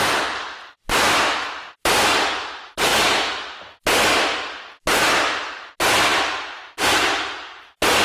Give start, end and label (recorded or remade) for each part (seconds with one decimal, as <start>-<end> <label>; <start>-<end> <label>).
0.0-8.0 recorded